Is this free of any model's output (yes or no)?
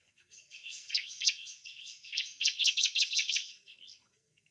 no